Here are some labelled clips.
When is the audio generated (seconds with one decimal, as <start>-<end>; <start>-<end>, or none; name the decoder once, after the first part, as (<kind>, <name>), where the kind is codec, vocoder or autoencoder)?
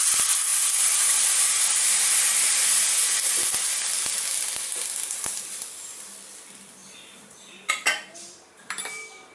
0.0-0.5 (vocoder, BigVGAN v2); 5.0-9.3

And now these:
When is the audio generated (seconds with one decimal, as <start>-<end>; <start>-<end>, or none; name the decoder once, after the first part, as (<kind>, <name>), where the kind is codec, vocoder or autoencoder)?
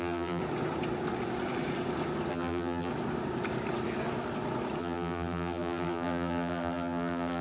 0.0-0.4 (vocoder, BigVGAN v2); 2.3-2.9; 4.8-7.4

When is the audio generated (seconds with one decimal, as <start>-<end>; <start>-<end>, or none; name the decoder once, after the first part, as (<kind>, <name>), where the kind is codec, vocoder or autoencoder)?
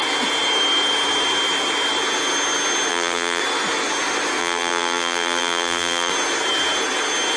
2.9-3.4 (vocoder, BigVGAN v2); 4.4-6.1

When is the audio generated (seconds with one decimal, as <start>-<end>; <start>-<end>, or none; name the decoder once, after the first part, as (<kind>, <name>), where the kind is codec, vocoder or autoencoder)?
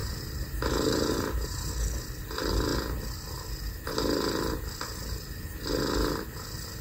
0.0-1.7 (vocoder, BigVGAN v2)